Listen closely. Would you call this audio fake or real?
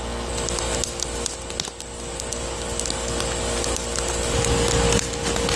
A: real